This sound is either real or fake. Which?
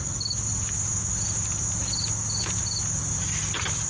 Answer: real